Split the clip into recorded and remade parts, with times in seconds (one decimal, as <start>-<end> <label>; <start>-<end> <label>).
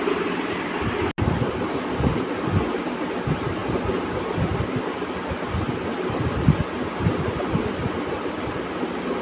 0.0-9.2 recorded